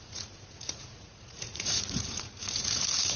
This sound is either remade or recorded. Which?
remade